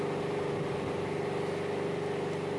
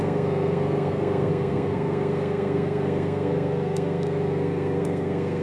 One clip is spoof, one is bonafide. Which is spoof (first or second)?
second